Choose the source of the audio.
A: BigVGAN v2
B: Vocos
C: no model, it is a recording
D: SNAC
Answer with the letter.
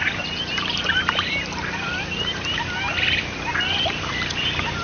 A